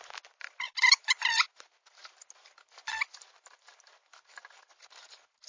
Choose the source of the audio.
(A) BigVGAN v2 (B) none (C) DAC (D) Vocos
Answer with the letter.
B